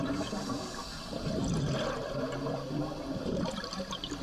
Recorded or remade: recorded